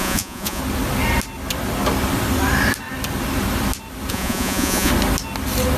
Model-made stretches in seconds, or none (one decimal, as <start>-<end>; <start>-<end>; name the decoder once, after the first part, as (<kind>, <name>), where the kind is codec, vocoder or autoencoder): 0.0-0.6 (vocoder, Vocos); 4.1-4.9